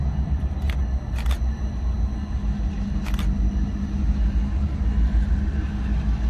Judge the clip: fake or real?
real